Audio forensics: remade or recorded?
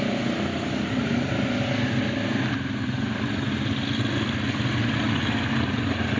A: recorded